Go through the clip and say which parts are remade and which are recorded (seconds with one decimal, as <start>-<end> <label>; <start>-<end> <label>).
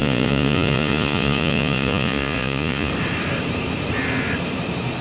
0.0-2.9 remade; 2.9-5.0 recorded